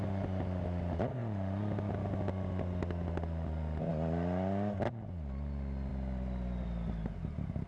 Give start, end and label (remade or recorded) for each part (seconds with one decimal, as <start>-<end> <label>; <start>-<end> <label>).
0.0-7.7 recorded